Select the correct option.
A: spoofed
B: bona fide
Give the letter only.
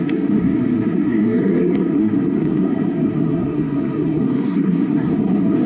A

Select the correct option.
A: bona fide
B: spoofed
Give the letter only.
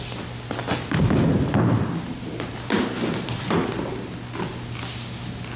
A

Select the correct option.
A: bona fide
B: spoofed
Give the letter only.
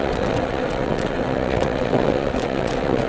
B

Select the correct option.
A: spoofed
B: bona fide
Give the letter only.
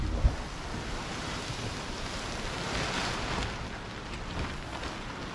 B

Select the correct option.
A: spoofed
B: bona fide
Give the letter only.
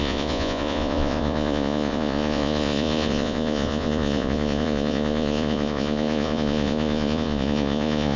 A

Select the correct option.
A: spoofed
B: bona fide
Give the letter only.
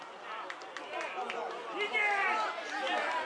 B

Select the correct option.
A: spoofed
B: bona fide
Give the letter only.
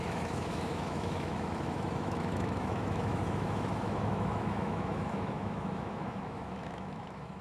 A